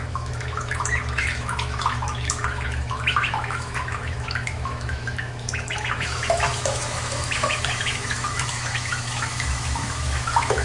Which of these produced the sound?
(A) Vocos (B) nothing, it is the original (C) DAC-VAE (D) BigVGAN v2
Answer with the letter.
C